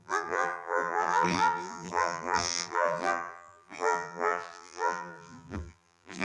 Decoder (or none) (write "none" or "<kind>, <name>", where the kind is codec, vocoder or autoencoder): vocoder, BigVGAN v2